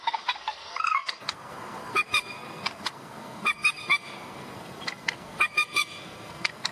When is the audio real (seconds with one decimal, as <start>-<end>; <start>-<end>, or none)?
none